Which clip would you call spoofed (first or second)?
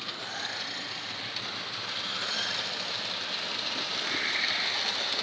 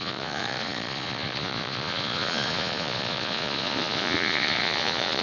second